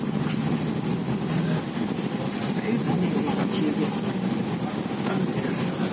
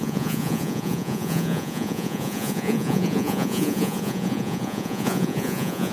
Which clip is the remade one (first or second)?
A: second